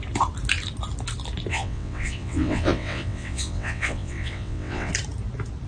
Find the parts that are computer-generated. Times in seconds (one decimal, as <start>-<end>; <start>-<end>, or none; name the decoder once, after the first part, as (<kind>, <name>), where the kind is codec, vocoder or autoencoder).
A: 1.5-4.9 (vocoder, WaveNeXt)